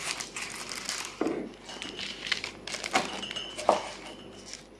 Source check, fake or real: real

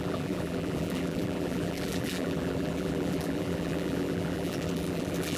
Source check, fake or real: fake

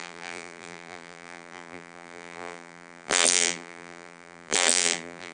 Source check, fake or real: fake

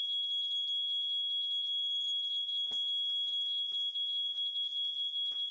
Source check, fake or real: real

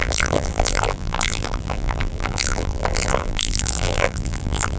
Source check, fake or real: fake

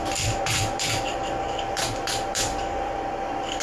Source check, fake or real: fake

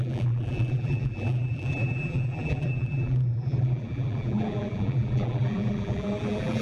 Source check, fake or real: fake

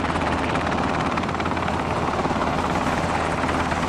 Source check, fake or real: fake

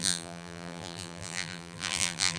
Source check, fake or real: fake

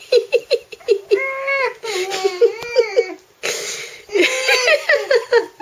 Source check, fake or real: real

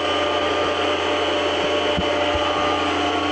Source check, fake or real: real